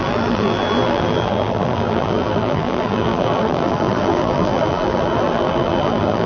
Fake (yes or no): yes